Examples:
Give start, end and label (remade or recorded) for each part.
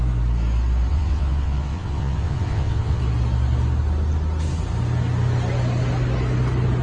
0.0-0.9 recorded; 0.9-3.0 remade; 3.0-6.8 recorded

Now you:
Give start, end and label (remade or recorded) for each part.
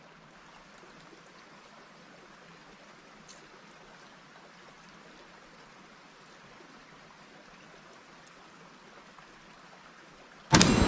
0.0-10.9 recorded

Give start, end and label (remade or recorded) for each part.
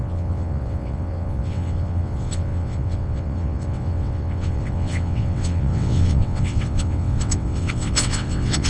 0.0-8.7 remade